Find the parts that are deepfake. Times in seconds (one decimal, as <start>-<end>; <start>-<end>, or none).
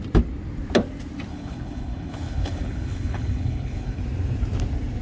1.3-4.0